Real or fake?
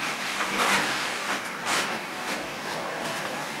fake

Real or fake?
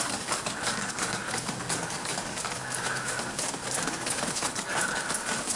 fake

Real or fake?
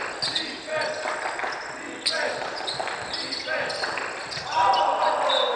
real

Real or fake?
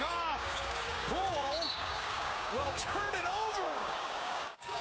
fake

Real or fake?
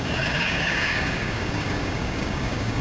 fake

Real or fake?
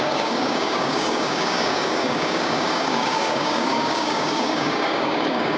fake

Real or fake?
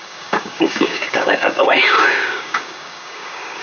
fake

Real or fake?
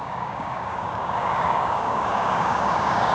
fake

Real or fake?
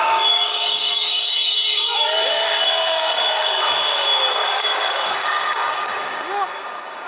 fake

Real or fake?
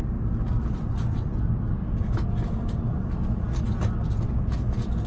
real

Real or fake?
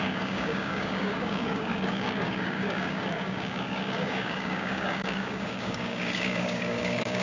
fake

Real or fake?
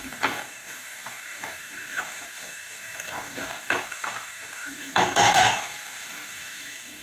fake